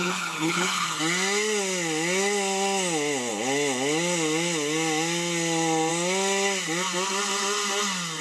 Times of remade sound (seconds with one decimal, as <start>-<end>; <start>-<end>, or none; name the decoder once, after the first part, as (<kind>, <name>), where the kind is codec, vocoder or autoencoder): 0.0-1.0 (codec, HILCodec)